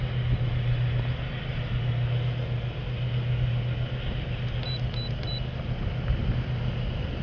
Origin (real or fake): real